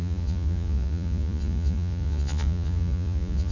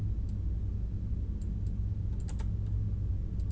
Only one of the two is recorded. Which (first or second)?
second